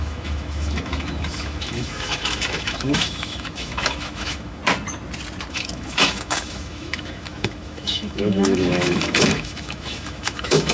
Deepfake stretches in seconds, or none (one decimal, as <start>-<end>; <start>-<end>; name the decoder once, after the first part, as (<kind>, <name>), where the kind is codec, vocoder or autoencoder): 0.0-4.6 (autoencoder, DAC-VAE); 5.5-10.7